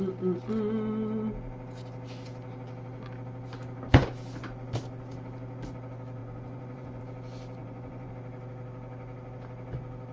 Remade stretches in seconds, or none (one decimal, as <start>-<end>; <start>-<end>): 6.2-7.0; 7.6-8.1